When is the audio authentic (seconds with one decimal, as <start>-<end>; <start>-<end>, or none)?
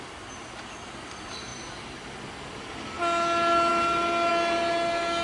0.0-5.2